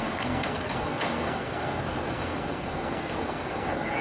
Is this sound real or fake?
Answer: fake